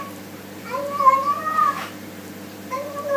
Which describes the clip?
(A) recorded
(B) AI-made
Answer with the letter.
B